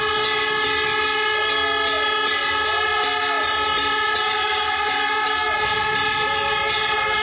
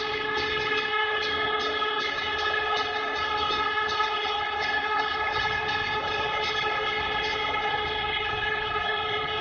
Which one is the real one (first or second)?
first